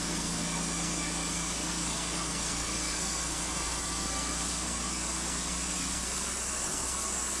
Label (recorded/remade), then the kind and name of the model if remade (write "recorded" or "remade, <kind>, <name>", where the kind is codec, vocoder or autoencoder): remade, codec, SNAC